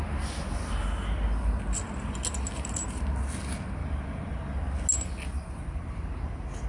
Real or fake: real